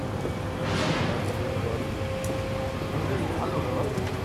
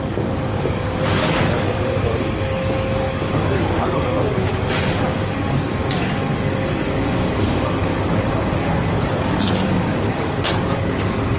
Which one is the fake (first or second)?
second